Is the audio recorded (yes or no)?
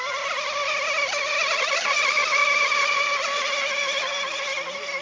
yes